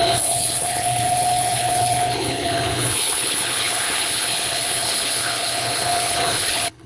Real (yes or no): no